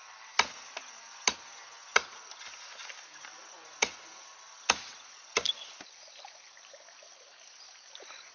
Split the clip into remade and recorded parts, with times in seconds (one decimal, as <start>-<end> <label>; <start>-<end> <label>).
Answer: 0.0-8.3 recorded